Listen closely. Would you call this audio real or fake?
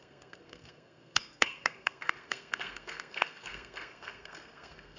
fake